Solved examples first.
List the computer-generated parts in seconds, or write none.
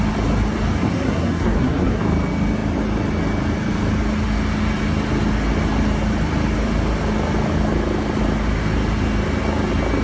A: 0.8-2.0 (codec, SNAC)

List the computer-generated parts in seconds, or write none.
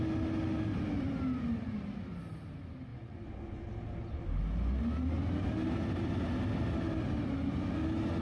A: 2.9-3.6 (vocoder, Vocos)